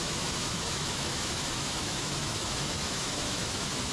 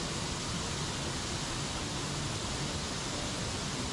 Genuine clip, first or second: second